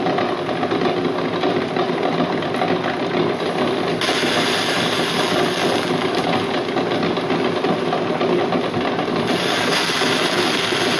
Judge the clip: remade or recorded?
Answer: recorded